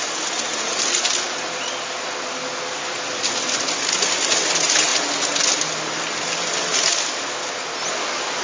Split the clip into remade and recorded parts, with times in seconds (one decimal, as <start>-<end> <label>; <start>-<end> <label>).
0.0-8.4 recorded